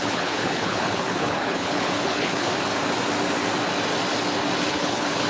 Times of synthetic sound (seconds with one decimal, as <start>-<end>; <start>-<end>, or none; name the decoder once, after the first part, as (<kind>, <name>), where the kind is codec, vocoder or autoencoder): 0.0-2.5 (codec, HILCodec); 4.7-5.3